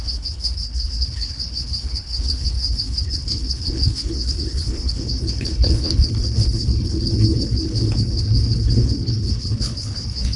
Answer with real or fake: fake